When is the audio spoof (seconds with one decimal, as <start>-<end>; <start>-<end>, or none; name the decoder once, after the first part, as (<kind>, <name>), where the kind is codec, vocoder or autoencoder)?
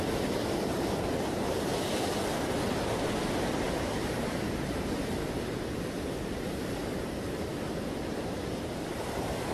0.0-1.7 (vocoder, BigVGAN v2); 3.3-5.2; 6.2-7.5; 8.0-9.5